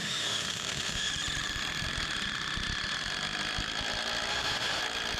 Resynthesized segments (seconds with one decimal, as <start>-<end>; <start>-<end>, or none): 0.0-1.1; 4.3-4.8